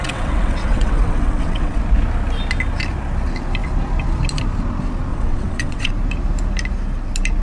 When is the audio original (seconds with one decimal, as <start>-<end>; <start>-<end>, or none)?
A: 1.8-5.1; 5.9-7.4